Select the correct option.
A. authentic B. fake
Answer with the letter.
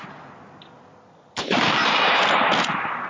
A